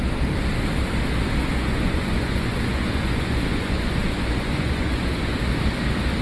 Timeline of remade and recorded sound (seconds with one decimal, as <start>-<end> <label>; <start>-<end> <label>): 0.0-1.4 recorded; 1.4-5.1 remade; 5.1-6.2 recorded